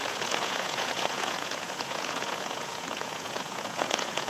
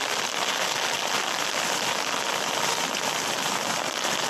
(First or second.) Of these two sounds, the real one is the second